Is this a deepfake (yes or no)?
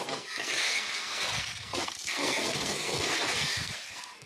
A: yes